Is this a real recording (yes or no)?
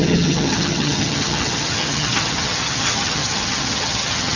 no